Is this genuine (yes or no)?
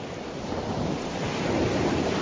yes